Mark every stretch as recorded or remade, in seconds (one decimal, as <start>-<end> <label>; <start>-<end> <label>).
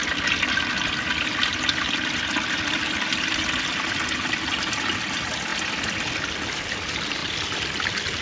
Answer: 0.0-8.2 recorded